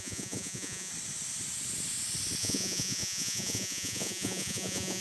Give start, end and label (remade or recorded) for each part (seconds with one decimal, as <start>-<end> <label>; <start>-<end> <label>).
0.0-0.9 remade; 0.9-2.4 recorded; 2.4-5.0 remade